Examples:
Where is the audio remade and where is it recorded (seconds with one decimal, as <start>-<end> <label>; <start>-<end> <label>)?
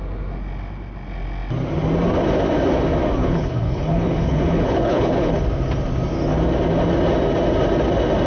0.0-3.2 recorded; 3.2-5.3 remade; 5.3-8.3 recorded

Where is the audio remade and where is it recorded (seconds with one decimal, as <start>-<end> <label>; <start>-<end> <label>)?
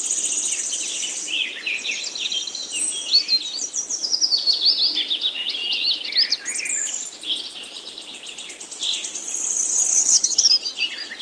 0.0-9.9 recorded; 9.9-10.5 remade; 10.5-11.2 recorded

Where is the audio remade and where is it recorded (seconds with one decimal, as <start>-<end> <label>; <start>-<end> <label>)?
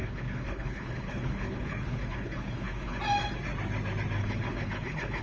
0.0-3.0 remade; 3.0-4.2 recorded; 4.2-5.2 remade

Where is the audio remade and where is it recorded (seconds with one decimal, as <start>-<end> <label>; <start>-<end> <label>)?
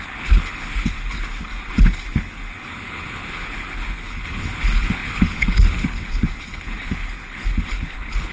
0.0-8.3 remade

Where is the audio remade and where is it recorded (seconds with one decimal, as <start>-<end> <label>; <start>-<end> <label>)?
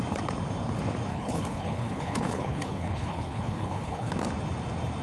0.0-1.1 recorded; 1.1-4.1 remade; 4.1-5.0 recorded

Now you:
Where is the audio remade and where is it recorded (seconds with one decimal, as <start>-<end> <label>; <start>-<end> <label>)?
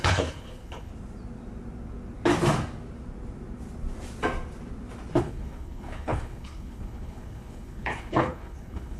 0.0-0.9 remade; 0.9-5.2 recorded; 5.2-9.0 remade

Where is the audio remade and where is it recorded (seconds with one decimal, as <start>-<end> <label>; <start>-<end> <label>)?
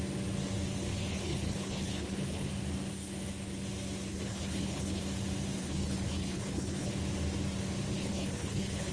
0.0-0.9 recorded; 0.9-2.5 remade; 2.5-4.1 recorded; 4.1-5.0 remade; 5.0-5.6 recorded; 5.6-6.9 remade; 6.9-7.9 recorded; 7.9-8.9 remade